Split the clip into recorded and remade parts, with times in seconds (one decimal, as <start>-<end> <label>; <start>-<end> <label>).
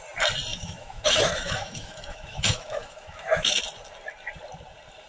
0.0-0.5 recorded; 0.5-3.6 remade; 3.6-5.1 recorded